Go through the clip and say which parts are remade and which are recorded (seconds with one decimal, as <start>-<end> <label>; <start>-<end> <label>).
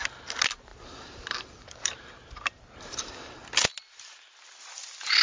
0.0-0.7 recorded; 0.7-3.1 remade; 3.1-5.2 recorded